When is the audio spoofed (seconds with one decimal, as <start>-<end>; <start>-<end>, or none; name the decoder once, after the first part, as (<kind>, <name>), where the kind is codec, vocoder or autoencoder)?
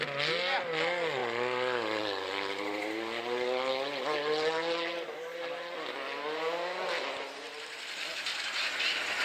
none